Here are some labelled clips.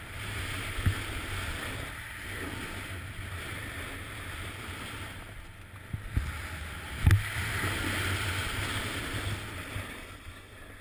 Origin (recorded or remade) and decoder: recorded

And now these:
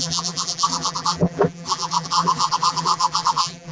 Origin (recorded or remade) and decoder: remade, vocoder, BigVGAN v2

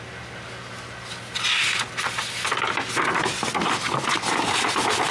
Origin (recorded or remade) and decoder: recorded